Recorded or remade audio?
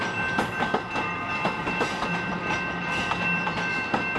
remade